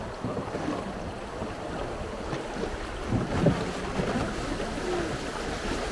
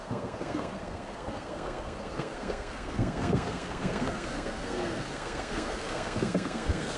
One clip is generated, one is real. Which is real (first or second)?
first